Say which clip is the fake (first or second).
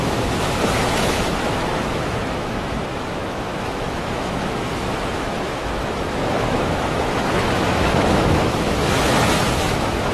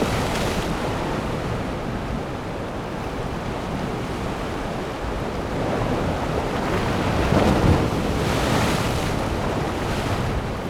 first